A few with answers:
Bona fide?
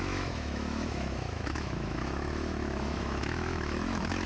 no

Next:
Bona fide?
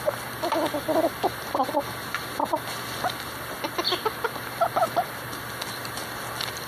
yes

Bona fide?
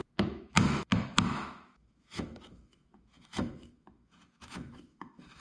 no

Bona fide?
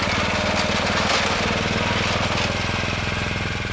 yes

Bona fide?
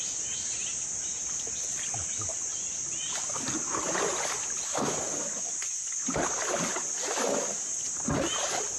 yes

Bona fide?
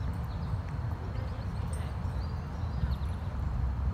yes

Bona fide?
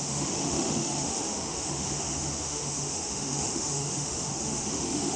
no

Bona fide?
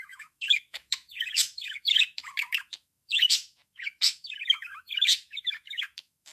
no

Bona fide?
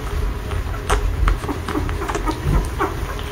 yes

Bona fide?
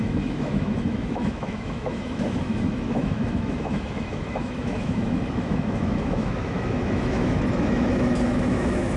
no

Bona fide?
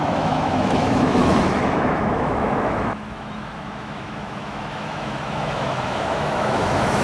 no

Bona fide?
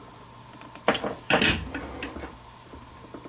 yes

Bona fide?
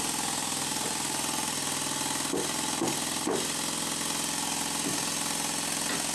yes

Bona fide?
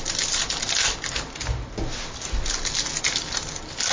yes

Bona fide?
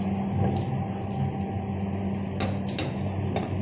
yes